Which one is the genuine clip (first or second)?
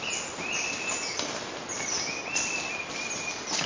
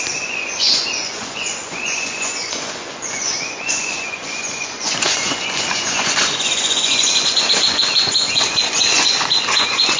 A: first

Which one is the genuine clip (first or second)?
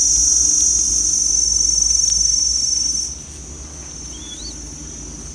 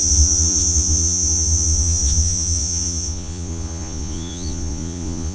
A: first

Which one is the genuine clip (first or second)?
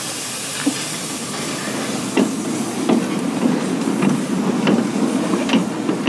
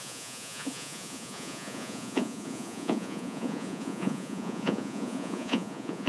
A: first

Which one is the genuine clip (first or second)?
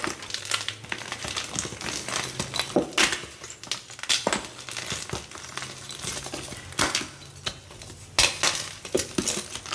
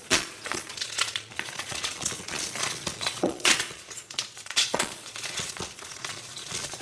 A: first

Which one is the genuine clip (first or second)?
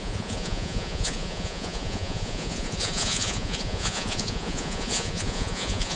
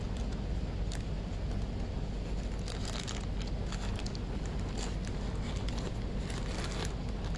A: second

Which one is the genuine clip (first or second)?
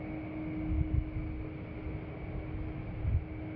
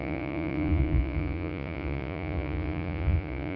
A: first